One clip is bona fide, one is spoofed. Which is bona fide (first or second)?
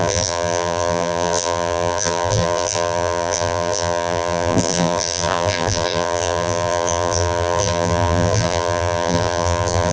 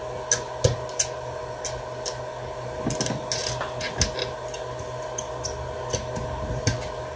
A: second